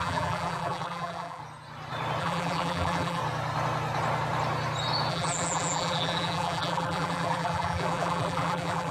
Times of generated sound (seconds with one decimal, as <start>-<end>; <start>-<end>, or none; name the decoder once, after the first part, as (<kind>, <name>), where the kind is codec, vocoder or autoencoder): 0.0-1.4 (vocoder, BigVGAN v2); 2.2-3.2; 5.1-8.9